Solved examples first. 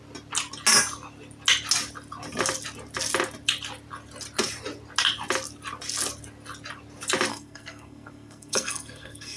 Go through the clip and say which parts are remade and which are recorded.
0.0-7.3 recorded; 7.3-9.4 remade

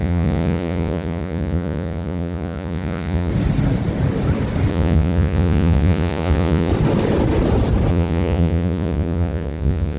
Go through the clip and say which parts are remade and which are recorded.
0.0-3.3 remade; 3.3-4.7 recorded; 4.7-6.7 remade; 6.7-7.9 recorded; 7.9-10.0 remade

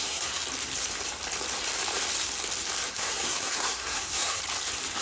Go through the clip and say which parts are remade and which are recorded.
0.0-0.4 remade; 0.4-2.9 recorded; 2.9-4.4 remade; 4.4-5.0 recorded

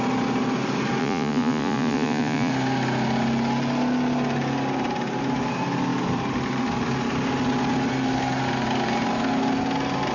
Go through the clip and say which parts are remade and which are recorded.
0.0-1.0 recorded; 1.0-2.5 remade; 2.5-10.1 recorded